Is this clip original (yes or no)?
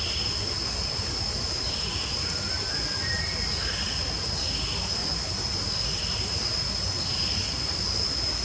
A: yes